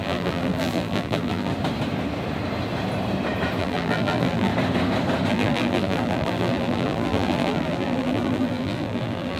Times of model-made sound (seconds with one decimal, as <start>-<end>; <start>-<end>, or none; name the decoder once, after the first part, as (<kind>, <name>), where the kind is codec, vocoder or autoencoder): 0.0-1.5 (vocoder, BigVGAN v2); 3.6-4.5; 5.3-9.4